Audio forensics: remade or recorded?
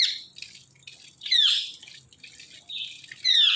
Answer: recorded